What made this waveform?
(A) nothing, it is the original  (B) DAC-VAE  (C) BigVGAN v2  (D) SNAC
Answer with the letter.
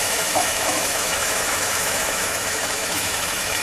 B